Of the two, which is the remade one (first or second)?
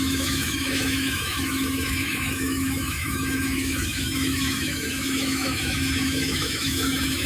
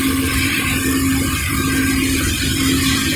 first